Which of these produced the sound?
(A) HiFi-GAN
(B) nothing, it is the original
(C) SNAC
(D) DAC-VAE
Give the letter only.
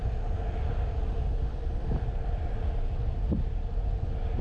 B